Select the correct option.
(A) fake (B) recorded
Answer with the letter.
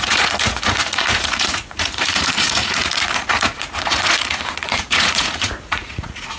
A